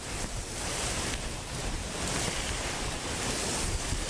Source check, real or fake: real